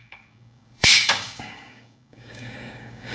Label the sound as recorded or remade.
remade